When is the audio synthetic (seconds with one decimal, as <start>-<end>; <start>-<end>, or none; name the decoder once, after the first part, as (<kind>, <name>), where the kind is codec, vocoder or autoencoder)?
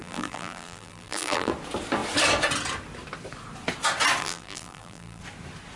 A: 0.0-1.5 (vocoder, BigVGAN v2); 4.2-5.2